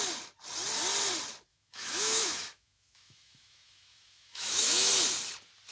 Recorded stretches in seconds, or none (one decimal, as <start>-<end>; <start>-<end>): 0.0-1.5; 4.9-5.7